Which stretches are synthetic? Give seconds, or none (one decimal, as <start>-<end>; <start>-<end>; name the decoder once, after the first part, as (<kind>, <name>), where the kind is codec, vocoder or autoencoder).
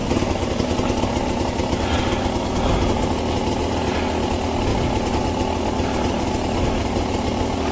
4.7-6.3 (vocoder, BigVGAN v2)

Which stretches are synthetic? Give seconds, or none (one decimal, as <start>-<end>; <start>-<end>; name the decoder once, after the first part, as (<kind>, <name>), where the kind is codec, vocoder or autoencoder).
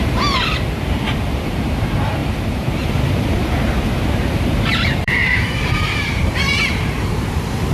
0.0-7.7 (vocoder, BigVGAN v2)